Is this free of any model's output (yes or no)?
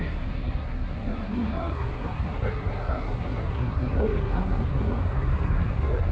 no